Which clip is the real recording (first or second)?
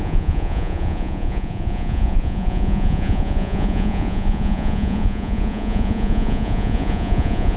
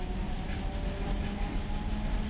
second